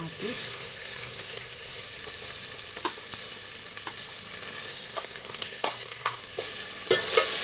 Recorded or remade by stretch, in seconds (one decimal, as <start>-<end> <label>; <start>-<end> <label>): 0.0-0.4 recorded; 0.4-1.8 remade; 1.8-4.7 recorded; 4.7-6.2 remade; 6.2-7.4 recorded